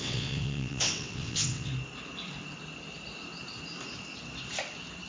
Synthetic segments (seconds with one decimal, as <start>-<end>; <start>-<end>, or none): 0.0-1.7